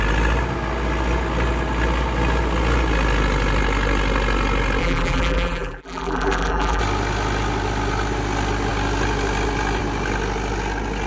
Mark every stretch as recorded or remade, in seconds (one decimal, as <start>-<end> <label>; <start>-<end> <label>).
0.0-4.8 recorded; 4.8-6.8 remade; 6.8-11.1 recorded